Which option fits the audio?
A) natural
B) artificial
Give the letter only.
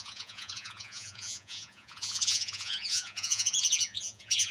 B